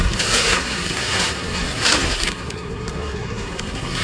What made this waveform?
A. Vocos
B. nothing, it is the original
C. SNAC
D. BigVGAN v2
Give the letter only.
C